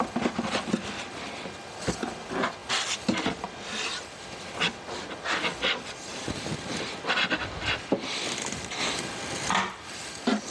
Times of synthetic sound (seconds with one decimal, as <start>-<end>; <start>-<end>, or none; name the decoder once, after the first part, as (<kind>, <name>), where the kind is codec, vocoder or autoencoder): none

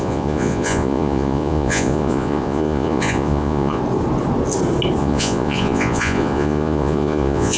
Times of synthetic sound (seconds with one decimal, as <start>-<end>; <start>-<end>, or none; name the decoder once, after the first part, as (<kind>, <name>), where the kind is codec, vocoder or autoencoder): 0.0-3.8 (vocoder, Vocos); 5.0-7.6

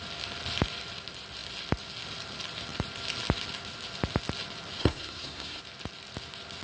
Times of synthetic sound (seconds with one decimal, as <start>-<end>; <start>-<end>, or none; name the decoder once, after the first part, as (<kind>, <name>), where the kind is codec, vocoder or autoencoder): 4.8-5.6 (codec, SNAC)

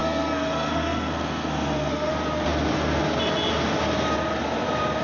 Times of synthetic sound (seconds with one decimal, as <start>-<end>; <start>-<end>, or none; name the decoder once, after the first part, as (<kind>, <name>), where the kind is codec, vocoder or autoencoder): 0.0-2.1 (codec, SNAC)

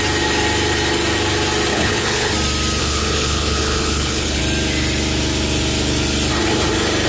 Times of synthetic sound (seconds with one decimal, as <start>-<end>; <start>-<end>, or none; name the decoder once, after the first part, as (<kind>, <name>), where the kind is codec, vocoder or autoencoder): 1.7-2.3 (codec, HILCodec); 2.8-4.4

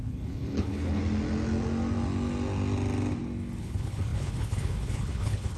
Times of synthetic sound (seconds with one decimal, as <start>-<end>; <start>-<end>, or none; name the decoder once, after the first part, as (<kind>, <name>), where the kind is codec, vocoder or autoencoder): 0.0-1.0 (codec, HILCodec); 3.6-5.6

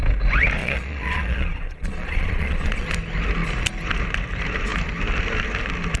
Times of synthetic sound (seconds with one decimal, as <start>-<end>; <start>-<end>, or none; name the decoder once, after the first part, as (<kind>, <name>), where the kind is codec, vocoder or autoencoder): 0.6-2.9 (vocoder, Vocos)

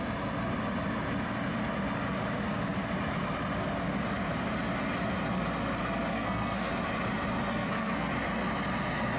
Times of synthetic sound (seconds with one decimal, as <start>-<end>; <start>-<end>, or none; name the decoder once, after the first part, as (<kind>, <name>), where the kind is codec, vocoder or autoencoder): 6.1-6.7 (codec, SNAC); 7.5-8.1